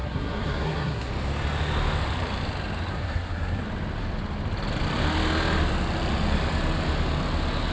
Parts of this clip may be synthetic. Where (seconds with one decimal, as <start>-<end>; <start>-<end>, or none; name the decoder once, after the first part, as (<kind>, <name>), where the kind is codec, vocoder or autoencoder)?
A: 0.0-1.1 (codec, SNAC); 2.9-3.6

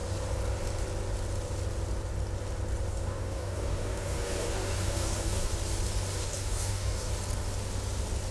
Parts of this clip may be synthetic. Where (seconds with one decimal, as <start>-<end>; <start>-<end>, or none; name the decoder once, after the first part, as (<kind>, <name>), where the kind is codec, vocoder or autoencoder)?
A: 2.9-5.5 (codec, DAC); 6.2-7.1

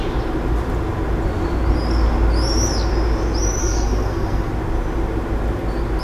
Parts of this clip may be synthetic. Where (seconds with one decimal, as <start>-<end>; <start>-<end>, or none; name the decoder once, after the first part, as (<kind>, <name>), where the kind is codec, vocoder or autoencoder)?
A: 3.6-4.5 (codec, SNAC)

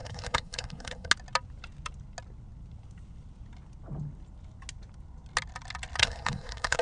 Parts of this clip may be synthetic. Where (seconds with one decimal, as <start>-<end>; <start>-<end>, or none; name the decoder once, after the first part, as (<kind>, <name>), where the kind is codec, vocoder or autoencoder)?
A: 0.0-1.1 (codec, SNAC); 6.0-6.8

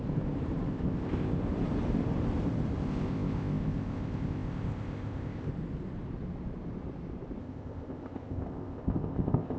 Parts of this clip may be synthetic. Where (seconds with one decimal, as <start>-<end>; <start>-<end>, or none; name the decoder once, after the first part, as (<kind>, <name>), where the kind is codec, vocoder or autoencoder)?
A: 0.7-1.4 (codec, ZipCodec); 2.8-5.5; 7.4-9.6

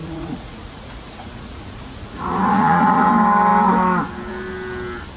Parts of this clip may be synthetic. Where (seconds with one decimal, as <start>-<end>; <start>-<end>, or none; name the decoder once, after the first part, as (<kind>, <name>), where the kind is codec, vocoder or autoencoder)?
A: 0.0-3.1 (vocoder, Vocos)

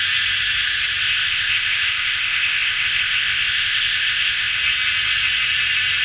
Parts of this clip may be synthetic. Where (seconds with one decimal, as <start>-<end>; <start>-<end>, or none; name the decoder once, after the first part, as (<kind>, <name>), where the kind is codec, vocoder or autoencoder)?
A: 1.0-4.6 (codec, ZipCodec)